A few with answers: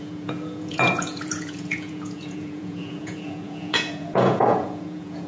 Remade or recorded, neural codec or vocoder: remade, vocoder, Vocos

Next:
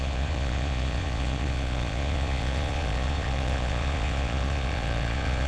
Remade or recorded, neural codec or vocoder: remade, vocoder, Vocos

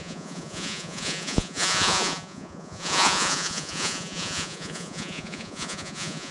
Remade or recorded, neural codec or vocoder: remade, vocoder, Vocos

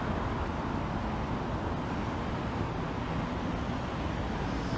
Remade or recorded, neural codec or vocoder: recorded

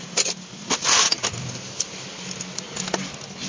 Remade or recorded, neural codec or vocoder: recorded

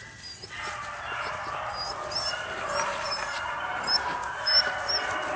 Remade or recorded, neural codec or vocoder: recorded